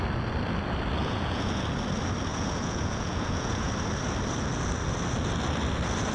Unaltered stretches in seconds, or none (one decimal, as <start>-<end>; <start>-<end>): 0.0-1.0; 1.6-2.3; 3.7-6.1